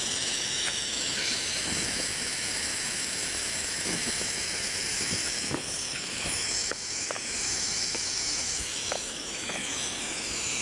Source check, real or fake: fake